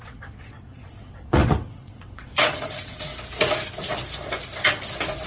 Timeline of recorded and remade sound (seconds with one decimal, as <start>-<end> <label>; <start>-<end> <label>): 0.0-3.1 remade; 3.1-5.3 recorded